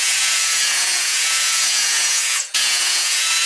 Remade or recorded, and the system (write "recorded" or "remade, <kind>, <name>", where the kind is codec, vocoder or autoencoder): remade, vocoder, Vocos